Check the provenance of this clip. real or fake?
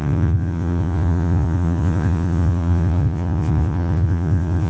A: fake